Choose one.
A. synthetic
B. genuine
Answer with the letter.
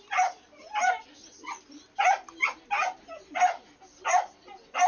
B